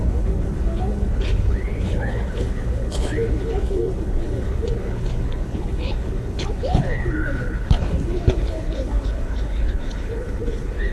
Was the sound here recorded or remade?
remade